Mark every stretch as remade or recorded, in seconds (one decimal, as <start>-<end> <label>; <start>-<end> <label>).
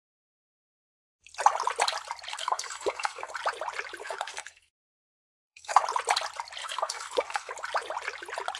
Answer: 0.0-2.3 recorded; 2.3-3.3 remade; 3.3-4.0 recorded; 4.0-5.8 remade; 5.8-6.6 recorded; 6.6-7.5 remade; 7.5-8.6 recorded